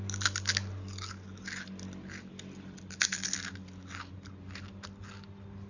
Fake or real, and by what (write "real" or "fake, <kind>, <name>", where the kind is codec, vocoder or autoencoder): real